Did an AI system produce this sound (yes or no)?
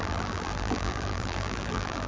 yes